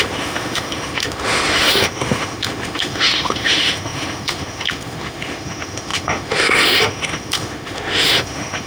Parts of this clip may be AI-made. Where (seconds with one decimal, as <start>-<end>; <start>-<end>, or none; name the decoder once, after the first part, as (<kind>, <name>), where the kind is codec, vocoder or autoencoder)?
0.0-8.7 (autoencoder, DAC-VAE)